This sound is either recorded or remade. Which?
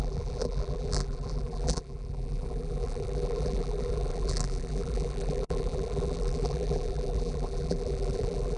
remade